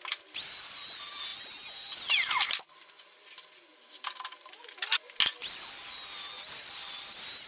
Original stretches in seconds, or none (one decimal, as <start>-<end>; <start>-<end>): 0.0-7.5